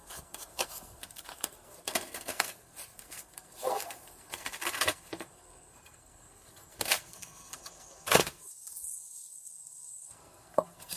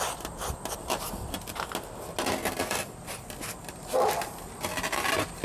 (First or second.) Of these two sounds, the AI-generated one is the first